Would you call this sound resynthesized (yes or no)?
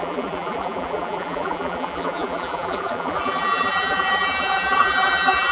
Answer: yes